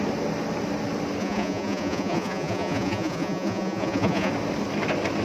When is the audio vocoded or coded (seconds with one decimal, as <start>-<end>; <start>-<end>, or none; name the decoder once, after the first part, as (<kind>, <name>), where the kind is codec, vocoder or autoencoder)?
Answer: 1.2-4.3 (vocoder, Vocos)